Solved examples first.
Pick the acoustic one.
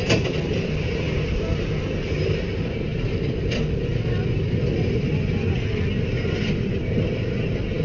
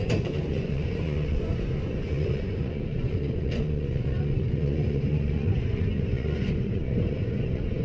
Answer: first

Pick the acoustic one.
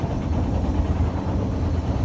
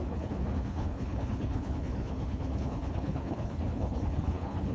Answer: first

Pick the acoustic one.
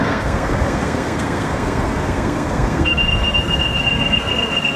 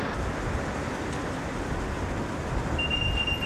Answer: second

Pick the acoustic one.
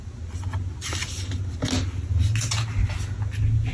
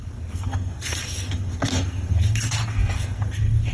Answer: first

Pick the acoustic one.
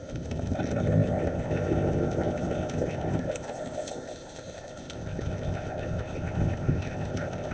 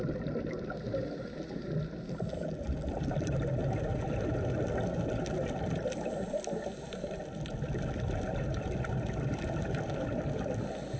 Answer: second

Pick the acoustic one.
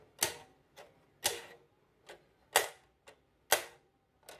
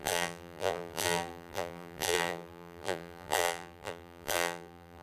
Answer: first